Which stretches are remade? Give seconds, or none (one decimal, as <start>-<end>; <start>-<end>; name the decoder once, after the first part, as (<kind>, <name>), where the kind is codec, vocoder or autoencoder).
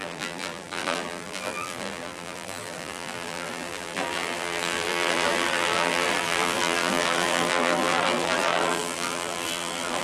0.0-10.0 (vocoder, BigVGAN v2)